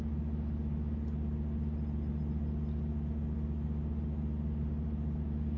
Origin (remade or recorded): recorded